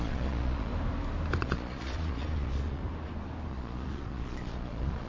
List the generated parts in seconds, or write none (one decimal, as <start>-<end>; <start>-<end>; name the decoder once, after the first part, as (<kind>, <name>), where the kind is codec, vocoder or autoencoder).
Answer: 0.0-0.7 (vocoder, Vocos); 1.4-2.8; 3.5-5.1